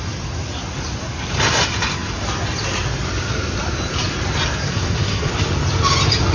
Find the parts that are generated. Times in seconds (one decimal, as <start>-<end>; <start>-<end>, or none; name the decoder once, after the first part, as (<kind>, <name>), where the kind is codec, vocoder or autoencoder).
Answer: 4.6-5.3 (codec, SNAC)